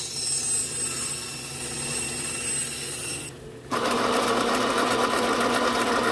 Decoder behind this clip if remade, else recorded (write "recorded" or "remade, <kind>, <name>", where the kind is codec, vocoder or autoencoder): recorded